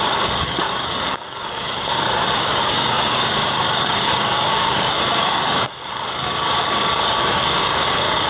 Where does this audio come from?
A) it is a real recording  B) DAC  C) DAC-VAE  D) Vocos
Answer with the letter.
B